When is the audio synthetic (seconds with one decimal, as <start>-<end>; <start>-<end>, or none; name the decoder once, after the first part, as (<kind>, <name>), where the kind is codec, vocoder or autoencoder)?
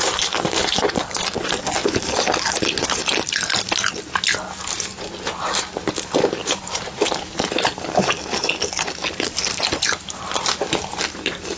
6.4-7.0 (vocoder, BigVGAN v2)